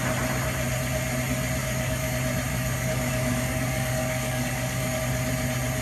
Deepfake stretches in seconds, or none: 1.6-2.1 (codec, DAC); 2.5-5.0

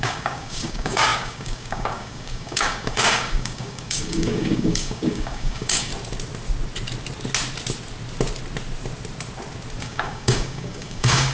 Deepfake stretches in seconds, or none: 0.0-5.9 (codec, DAC); 9.8-11.3

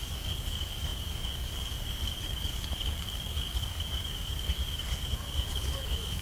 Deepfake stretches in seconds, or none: 0.0-6.2 (codec, DAC)

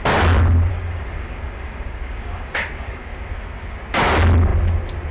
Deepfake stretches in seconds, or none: 0.7-3.8 (codec, DAC)

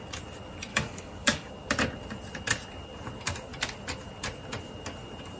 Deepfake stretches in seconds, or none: 0.7-1.5 (codec, DAC)